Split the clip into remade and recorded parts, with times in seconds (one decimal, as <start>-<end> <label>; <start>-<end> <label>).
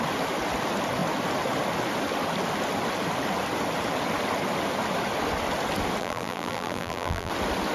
0.0-6.0 recorded; 6.0-7.3 remade; 7.3-7.7 recorded